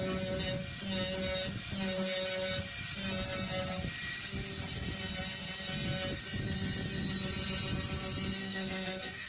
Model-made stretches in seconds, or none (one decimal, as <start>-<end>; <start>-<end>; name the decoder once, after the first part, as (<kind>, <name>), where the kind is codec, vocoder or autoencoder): 8.4-9.3 (codec, SNAC)